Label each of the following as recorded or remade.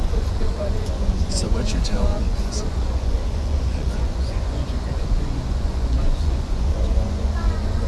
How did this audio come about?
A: remade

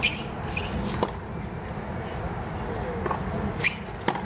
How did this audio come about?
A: recorded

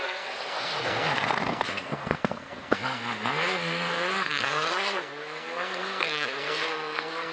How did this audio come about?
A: remade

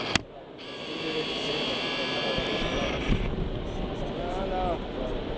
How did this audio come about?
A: recorded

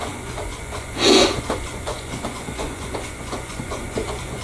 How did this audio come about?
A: remade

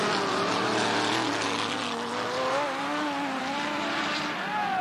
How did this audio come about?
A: recorded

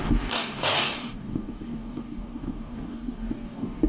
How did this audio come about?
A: remade